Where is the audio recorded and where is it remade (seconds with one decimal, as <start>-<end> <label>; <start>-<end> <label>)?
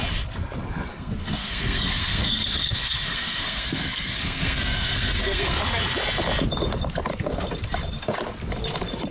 0.0-0.9 recorded; 0.9-5.6 remade; 5.6-9.1 recorded